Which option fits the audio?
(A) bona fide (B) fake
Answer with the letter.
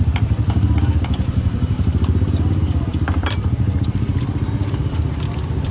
B